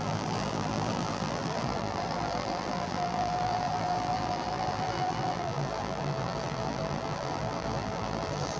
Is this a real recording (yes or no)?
no